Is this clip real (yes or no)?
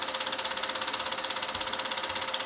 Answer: yes